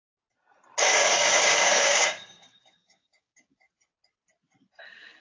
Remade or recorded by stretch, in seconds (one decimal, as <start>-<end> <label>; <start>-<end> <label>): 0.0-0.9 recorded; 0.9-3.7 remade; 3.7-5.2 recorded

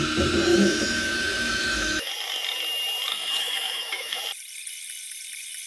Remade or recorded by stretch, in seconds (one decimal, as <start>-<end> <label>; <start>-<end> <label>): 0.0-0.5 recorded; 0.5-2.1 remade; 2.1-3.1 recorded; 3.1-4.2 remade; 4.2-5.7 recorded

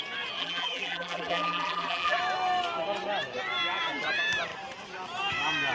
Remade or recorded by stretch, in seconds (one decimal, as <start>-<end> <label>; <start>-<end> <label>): 0.0-0.4 recorded; 0.4-2.2 remade; 2.2-5.7 recorded